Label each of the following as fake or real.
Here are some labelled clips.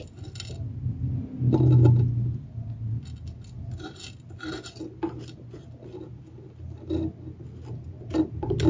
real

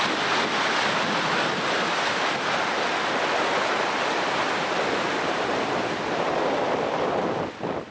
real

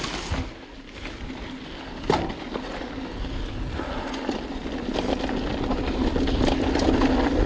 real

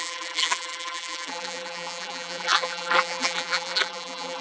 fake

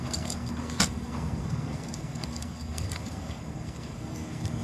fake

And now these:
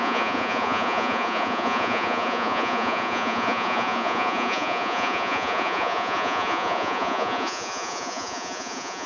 fake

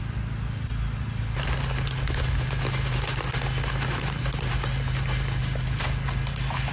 real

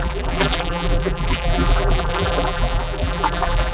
fake